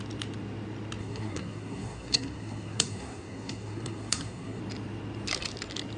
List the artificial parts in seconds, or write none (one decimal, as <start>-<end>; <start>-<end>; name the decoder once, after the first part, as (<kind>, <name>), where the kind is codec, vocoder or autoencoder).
1.0-4.6 (codec, SNAC)